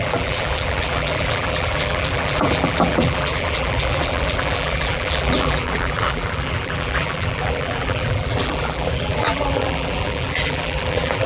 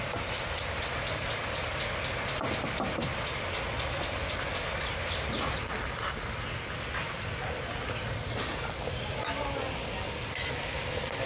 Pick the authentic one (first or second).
second